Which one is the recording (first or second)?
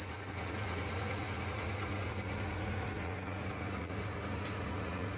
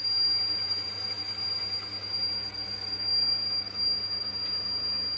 second